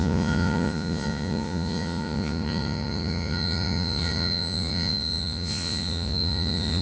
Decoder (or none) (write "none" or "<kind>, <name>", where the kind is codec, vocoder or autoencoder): vocoder, Vocos